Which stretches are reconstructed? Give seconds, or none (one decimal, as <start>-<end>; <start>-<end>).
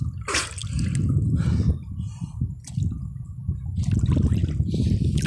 none